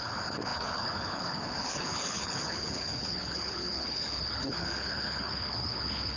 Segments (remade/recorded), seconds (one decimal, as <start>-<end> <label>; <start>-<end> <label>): 0.0-6.2 remade